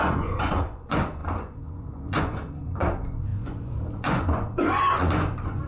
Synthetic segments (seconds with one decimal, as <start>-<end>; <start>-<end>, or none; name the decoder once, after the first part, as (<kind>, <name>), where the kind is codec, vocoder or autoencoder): 0.0-5.7 (vocoder, Vocos)